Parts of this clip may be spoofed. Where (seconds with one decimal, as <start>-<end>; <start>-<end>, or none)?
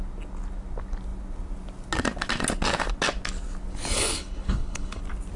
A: 3.9-5.0